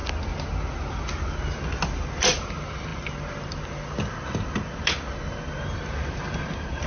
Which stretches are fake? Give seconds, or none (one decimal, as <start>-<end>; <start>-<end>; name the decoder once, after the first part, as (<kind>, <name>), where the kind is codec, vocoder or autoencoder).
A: none

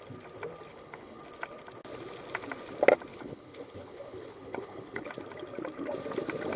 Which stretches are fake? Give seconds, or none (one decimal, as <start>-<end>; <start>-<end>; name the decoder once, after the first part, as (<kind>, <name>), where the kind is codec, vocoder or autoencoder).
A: 0.7-1.2 (codec, HILCodec); 3.1-5.1

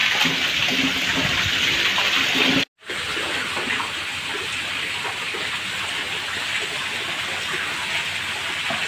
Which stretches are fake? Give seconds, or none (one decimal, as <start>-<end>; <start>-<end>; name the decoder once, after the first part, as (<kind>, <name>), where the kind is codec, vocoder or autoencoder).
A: none

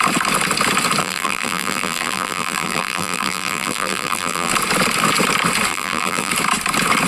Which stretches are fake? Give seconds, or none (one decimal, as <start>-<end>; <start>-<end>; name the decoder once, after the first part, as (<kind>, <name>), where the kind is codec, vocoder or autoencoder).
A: 1.0-4.5 (vocoder, BigVGAN v2); 5.7-6.3

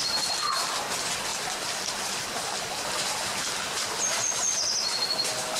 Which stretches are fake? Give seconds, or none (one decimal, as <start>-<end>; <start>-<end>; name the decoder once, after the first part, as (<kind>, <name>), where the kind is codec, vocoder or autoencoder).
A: none

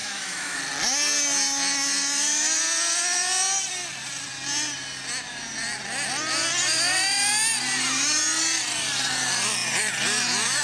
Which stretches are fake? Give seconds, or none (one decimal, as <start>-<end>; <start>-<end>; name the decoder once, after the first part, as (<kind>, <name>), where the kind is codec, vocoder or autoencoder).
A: 0.0-0.6 (autoencoder, DAC-VAE)

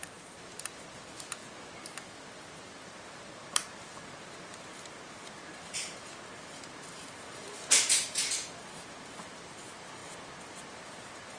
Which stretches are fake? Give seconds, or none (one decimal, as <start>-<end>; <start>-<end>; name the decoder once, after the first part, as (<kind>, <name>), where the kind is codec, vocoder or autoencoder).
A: 0.0-0.7 (vocoder, BigVGAN v2)

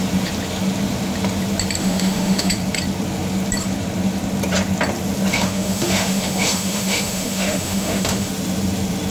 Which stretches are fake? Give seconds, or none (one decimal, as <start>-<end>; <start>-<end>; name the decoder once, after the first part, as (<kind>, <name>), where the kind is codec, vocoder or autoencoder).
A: 1.8-2.5 (autoencoder, DAC-VAE); 5.3-8.3